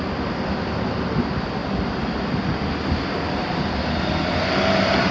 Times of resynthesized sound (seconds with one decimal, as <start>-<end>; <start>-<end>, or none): none